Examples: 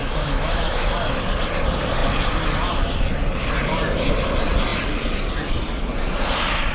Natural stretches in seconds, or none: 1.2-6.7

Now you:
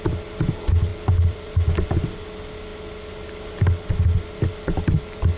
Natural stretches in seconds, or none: 0.0-0.9; 1.7-5.4

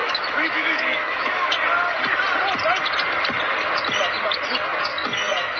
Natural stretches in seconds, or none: 1.5-5.6

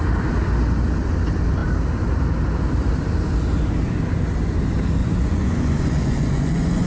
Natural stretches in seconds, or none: 0.0-5.0

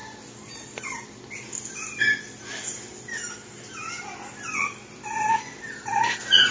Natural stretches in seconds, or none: 0.0-6.5